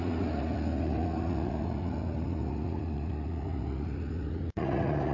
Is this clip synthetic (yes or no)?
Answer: yes